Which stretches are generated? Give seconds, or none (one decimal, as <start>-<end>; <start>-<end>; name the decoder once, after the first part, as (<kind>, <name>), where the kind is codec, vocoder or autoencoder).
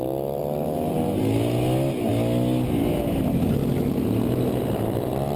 0.4-1.2 (vocoder, BigVGAN v2)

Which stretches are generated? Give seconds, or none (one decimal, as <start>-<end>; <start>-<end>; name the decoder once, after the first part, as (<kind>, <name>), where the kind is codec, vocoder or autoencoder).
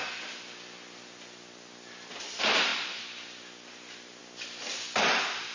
none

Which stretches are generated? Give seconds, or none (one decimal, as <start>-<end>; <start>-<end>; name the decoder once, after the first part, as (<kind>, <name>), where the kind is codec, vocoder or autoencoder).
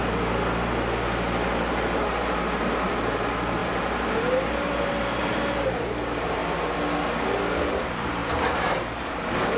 2.9-6.4 (vocoder, BigVGAN v2); 7.7-9.6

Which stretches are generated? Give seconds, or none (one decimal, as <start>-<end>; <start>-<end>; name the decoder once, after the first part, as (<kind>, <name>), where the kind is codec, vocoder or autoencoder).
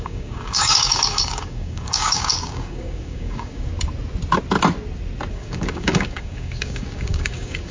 0.0-3.7 (codec, DAC); 5.3-7.7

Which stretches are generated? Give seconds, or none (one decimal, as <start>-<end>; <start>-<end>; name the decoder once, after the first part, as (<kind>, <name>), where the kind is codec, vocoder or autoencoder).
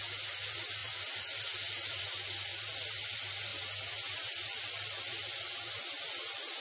none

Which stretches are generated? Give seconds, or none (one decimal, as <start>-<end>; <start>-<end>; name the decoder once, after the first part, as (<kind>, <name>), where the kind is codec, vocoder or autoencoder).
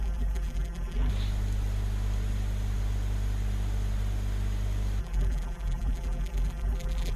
0.0-1.1 (vocoder, BigVGAN v2); 5.0-7.2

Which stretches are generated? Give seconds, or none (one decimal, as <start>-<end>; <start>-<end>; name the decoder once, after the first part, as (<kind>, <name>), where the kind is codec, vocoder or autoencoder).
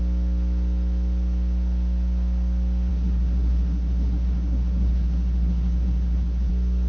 2.9-6.5 (codec, SNAC)